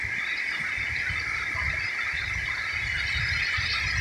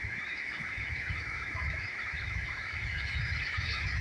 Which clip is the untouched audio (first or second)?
first